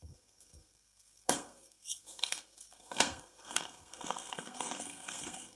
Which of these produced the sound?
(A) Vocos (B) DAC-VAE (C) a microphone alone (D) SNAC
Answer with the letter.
D